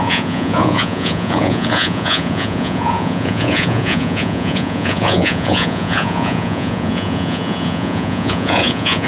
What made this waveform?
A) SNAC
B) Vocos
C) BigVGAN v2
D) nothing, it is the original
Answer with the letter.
B